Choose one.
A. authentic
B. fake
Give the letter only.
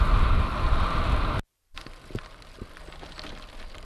A